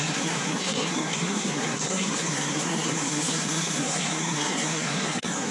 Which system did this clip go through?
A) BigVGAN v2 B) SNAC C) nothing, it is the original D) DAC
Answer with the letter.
B